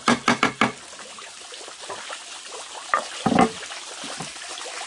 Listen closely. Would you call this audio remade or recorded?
recorded